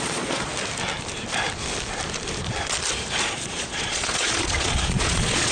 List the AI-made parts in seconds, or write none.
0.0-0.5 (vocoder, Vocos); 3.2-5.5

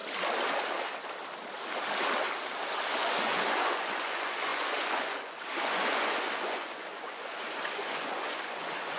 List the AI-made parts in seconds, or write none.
2.9-9.0 (vocoder, Vocos)